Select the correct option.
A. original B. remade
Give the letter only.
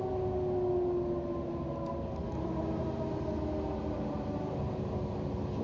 A